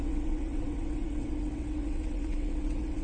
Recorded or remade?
remade